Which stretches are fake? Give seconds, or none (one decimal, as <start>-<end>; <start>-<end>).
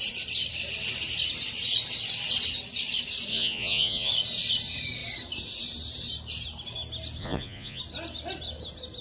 3.3-4.1; 7.2-7.8